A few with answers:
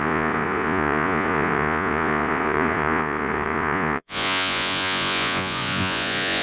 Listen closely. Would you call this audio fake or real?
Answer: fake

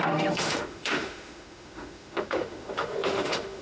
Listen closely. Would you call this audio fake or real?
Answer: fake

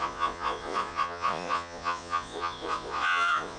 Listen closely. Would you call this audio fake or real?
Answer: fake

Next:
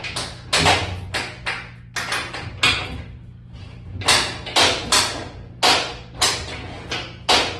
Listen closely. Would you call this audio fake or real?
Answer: real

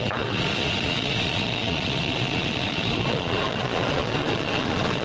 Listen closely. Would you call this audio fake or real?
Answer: fake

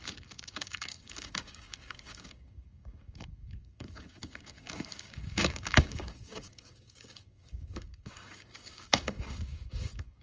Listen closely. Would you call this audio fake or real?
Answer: fake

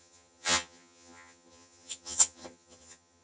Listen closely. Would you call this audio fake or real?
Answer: fake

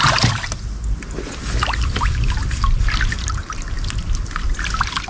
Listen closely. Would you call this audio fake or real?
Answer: real